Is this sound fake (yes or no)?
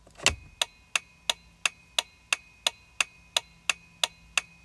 no